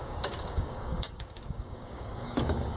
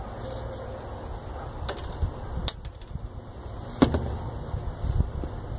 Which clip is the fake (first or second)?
first